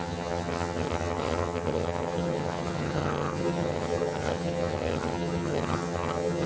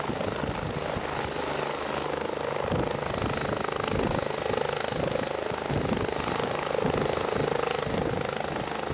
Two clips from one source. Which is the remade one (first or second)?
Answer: first